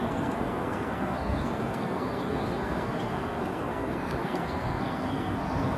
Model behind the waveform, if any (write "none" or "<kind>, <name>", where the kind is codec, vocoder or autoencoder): codec, SNAC